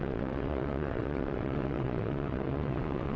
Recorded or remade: remade